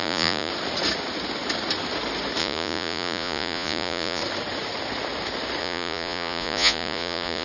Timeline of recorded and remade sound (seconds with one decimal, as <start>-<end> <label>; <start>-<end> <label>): 0.0-0.5 remade; 0.5-2.4 recorded; 2.4-4.2 remade; 4.2-5.6 recorded; 5.6-7.4 remade